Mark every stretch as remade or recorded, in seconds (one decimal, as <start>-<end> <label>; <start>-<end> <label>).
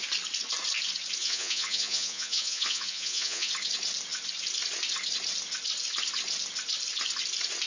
0.0-1.2 recorded; 1.2-3.5 remade; 3.5-7.7 recorded